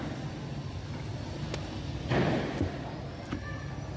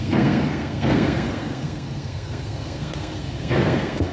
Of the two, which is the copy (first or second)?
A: second